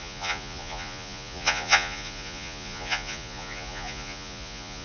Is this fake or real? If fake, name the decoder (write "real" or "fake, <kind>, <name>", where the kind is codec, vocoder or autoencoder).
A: fake, vocoder, Vocos